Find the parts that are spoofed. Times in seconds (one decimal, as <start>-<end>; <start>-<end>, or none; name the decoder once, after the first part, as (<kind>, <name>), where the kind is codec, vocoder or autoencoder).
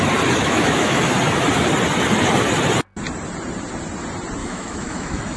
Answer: 0.4-1.1 (autoencoder, DAC-VAE); 4.4-5.4